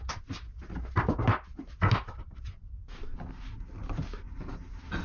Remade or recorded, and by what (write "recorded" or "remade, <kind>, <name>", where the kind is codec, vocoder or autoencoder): recorded